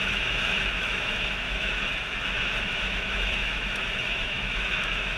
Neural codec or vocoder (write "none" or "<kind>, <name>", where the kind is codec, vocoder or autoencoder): autoencoder, DAC-VAE